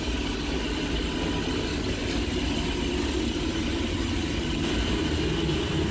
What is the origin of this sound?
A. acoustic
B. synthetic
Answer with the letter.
A